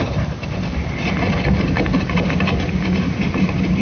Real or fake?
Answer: real